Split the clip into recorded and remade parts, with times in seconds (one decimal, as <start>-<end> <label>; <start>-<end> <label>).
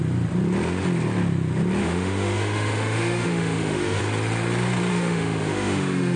0.0-1.8 recorded; 1.8-4.0 remade; 4.0-4.9 recorded; 4.9-6.2 remade